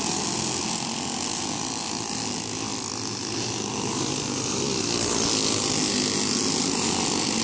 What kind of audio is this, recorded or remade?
recorded